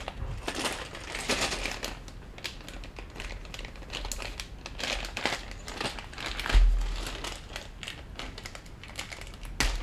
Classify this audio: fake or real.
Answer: real